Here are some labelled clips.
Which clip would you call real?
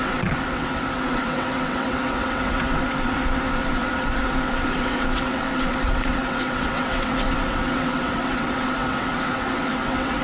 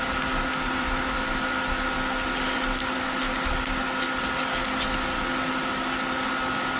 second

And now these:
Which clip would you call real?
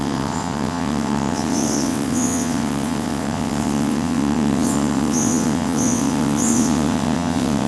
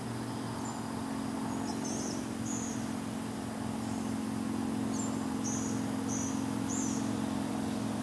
second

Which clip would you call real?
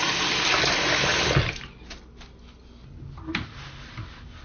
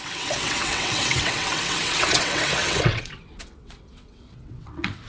first